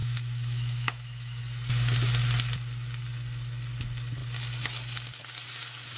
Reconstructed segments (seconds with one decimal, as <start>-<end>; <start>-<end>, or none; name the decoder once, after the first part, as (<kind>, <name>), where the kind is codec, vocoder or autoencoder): 0.0-1.4 (autoencoder, DAC-VAE)